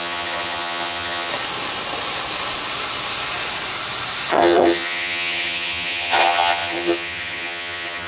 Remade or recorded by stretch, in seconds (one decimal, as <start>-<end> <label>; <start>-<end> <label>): 0.0-1.3 remade; 1.3-4.3 recorded; 4.3-8.1 remade